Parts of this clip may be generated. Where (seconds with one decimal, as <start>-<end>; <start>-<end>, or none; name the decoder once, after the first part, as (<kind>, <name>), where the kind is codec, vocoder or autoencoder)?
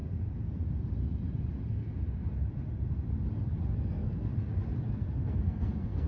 3.7-4.3 (codec, SNAC); 4.9-6.1